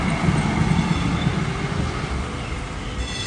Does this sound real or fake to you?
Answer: real